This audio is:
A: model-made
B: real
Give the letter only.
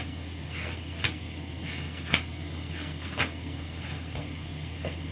A